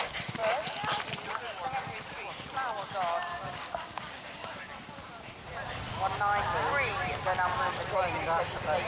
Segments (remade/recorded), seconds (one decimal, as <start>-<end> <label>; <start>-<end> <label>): 0.0-3.3 recorded; 3.3-4.6 remade; 4.6-8.9 recorded